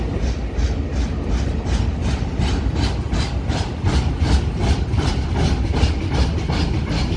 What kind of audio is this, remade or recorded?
recorded